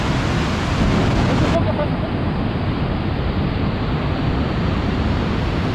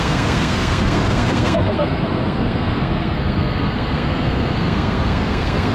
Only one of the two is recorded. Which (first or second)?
first